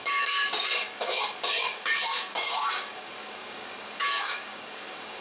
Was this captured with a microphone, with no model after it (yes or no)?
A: no